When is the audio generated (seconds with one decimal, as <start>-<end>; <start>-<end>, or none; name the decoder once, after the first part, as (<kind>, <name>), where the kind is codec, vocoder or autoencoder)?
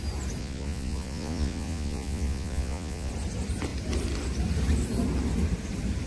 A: 0.4-3.1 (vocoder, Vocos)